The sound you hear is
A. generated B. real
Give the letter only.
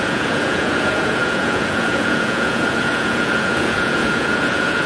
A